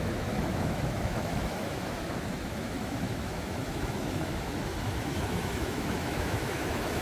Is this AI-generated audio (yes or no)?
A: yes